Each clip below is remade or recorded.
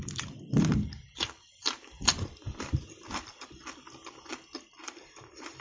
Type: remade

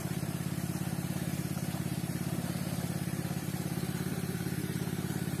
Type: remade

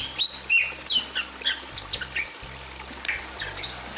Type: recorded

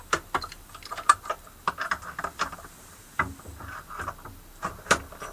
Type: remade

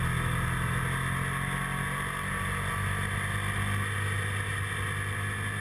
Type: recorded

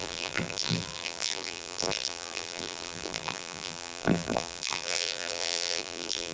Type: remade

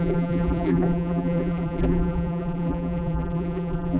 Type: remade